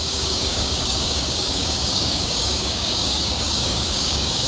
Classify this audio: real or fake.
fake